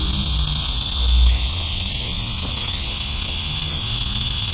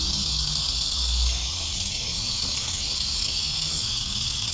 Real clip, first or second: first